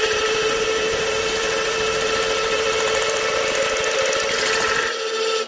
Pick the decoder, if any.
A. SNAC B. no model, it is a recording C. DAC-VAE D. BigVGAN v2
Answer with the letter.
B